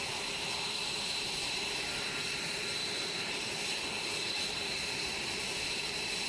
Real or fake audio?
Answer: fake